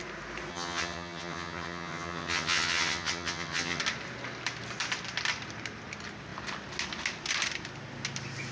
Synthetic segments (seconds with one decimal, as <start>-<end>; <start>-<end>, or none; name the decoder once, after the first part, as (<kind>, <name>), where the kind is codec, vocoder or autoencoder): 0.5-3.8 (vocoder, HiFi-GAN)